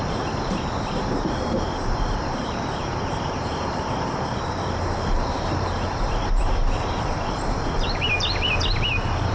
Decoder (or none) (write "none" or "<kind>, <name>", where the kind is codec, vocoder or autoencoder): vocoder, BigVGAN v2